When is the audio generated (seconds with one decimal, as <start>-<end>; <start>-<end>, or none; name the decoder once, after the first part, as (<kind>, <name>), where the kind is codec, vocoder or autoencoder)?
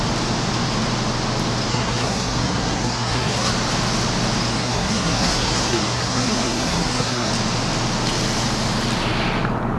1.7-3.5 (codec, SNAC); 4.5-7.3